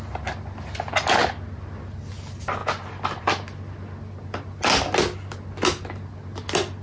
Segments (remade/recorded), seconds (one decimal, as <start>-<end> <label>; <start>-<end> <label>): 0.0-6.8 recorded

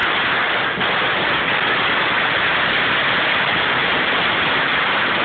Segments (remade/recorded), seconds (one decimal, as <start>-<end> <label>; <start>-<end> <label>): 0.0-5.2 recorded

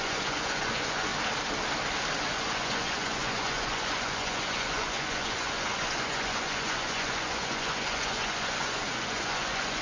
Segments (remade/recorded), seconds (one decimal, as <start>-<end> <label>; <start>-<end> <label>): 0.0-1.1 remade; 1.1-2.2 recorded; 2.2-9.8 remade

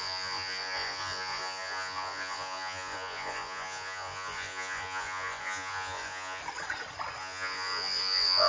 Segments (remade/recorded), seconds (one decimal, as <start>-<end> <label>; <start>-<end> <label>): 0.0-6.4 remade; 6.4-7.2 recorded; 7.2-8.5 remade

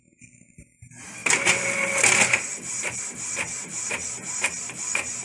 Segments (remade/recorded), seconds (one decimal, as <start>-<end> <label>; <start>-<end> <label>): 0.0-5.2 recorded

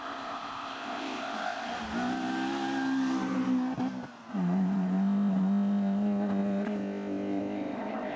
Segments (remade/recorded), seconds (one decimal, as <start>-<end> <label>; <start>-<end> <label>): 0.0-1.7 remade; 1.7-4.3 recorded; 4.3-8.2 remade